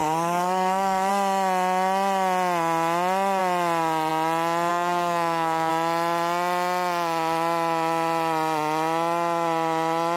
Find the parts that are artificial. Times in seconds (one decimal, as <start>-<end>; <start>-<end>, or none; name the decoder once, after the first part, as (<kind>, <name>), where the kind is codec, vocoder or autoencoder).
0.0-1.1 (codec, SNAC); 4.7-5.7